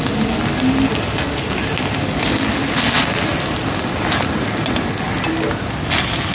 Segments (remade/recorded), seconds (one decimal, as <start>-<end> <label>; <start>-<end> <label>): 0.0-6.3 recorded